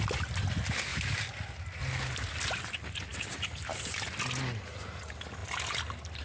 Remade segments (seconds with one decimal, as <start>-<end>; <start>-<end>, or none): 0.9-1.5; 3.1-3.9; 5.4-6.2